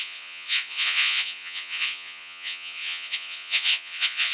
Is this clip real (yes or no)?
no